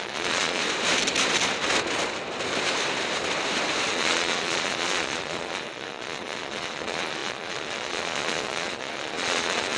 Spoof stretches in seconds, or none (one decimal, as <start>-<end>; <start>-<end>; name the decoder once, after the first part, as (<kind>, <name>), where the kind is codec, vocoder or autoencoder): 0.0-0.6 (vocoder, Vocos); 3.9-9.8